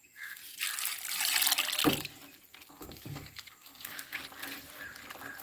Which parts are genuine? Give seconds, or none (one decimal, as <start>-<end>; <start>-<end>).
0.4-2.7; 4.2-5.4